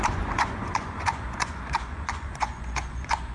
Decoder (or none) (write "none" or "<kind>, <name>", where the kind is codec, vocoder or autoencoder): vocoder, Vocos